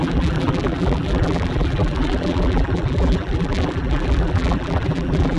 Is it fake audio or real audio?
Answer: fake